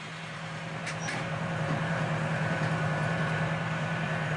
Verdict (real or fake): fake